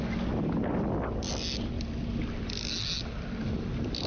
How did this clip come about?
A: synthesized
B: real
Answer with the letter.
B